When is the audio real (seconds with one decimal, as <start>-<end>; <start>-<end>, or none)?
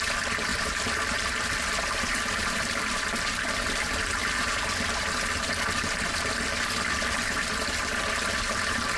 0.0-0.5; 4.7-9.0